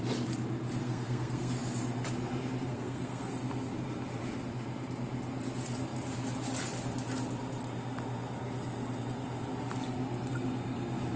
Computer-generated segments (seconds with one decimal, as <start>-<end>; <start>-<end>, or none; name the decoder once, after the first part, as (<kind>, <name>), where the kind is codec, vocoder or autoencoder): 0.8-1.5 (codec, SNAC); 2.7-3.3